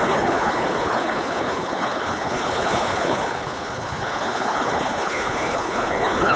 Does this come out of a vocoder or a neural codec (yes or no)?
yes